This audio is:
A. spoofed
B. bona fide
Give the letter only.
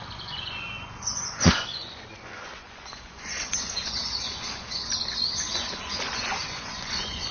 A